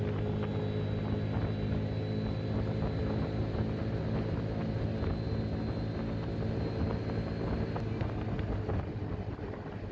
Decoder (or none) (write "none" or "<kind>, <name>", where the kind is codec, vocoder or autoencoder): none